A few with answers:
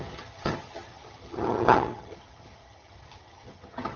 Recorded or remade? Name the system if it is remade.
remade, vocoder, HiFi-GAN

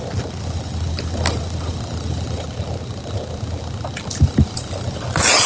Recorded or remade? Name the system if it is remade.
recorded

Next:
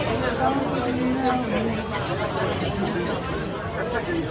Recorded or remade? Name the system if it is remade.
recorded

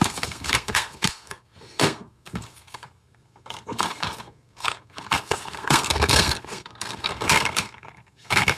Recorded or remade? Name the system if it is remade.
remade, codec, SNAC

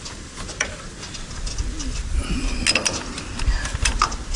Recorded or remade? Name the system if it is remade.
recorded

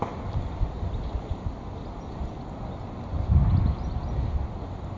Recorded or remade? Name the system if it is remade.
recorded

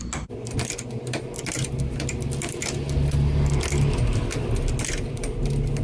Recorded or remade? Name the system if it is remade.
recorded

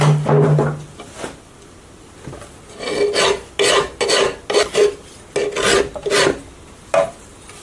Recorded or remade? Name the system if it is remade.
recorded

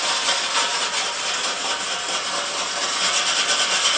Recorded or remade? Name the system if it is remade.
recorded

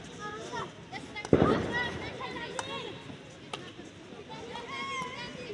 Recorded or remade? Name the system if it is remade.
recorded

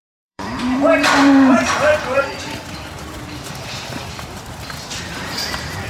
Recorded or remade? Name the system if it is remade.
remade, vocoder, BigVGAN v2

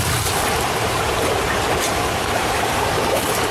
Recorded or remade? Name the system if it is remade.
recorded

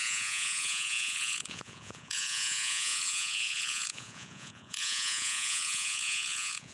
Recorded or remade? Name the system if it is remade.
remade, vocoder, Vocos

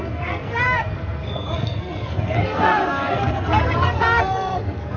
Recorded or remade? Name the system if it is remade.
remade, codec, SNAC